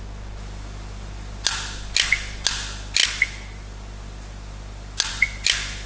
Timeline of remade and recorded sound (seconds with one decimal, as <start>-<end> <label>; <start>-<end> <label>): 0.0-5.9 recorded

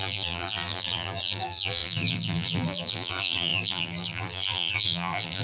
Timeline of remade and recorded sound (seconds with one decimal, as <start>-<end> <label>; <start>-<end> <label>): 0.0-5.4 remade

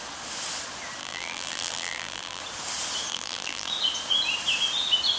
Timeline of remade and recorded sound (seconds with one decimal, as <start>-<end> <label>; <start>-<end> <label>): 0.0-1.0 recorded; 1.0-2.4 remade; 2.4-3.1 recorded; 3.1-3.7 remade; 3.7-5.2 recorded

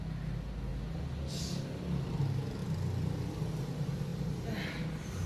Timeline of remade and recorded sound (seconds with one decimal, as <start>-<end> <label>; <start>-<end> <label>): 0.0-5.3 recorded